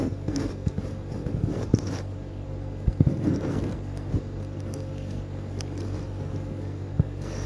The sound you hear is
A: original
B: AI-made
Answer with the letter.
B